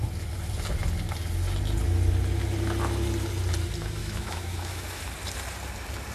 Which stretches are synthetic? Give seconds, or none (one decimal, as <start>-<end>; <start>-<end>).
4.0-5.0